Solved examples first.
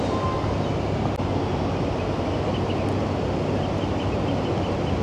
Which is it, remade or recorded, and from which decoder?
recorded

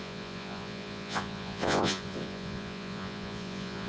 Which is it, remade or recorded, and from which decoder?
remade, vocoder, Vocos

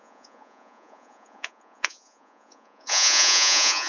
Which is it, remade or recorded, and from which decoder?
remade, vocoder, Vocos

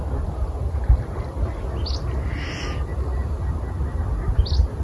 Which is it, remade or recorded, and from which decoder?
recorded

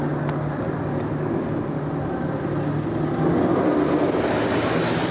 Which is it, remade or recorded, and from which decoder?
recorded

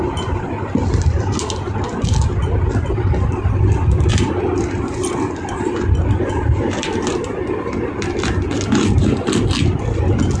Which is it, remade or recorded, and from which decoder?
recorded